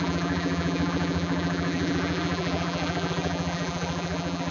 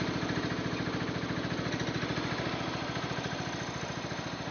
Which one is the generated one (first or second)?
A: first